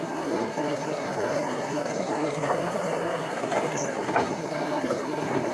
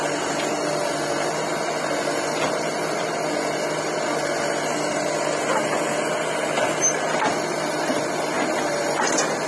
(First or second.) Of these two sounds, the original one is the second